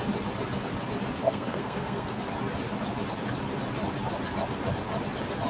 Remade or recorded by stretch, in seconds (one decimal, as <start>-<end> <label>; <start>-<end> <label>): 0.0-1.2 recorded; 1.2-2.2 remade; 2.2-5.5 recorded